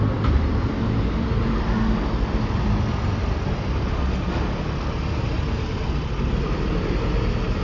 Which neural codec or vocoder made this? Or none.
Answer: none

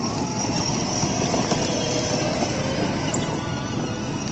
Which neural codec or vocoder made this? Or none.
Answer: none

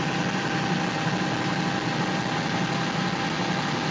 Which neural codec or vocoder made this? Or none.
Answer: none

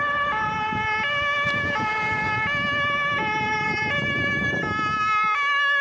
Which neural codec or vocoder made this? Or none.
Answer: none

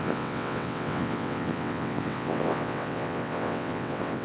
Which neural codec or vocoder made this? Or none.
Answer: vocoder, WaveNeXt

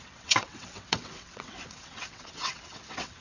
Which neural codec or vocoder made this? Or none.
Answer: vocoder, WaveNeXt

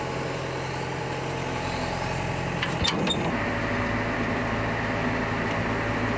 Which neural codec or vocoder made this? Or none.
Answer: none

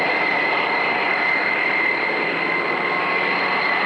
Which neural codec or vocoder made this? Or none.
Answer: none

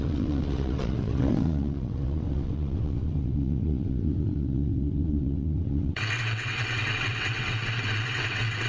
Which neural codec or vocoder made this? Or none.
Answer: vocoder, WaveNeXt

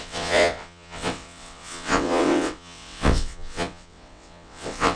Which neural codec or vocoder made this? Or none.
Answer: vocoder, WaveNeXt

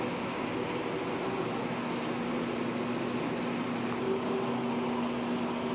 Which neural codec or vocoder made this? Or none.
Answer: none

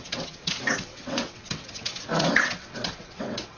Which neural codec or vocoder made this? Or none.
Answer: vocoder, WaveNeXt